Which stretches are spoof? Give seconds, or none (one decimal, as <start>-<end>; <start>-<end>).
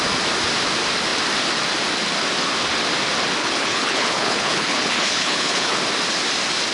3.4-5.8